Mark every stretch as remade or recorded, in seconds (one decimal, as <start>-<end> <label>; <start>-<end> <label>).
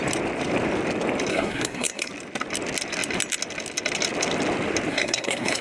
0.0-1.3 recorded; 1.3-2.1 remade; 2.1-4.9 recorded; 4.9-5.6 remade